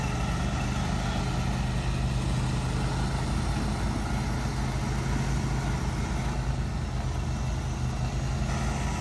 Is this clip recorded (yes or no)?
yes